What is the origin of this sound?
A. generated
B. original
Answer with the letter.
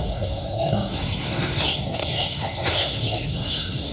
A